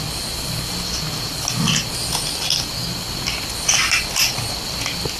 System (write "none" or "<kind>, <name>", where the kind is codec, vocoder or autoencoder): none